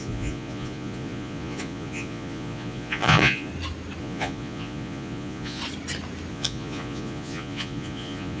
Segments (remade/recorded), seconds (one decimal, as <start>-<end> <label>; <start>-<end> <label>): 0.0-3.5 remade; 3.5-4.0 recorded; 4.0-5.6 remade; 5.6-6.3 recorded; 6.3-8.4 remade